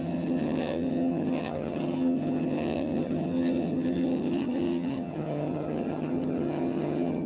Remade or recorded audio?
remade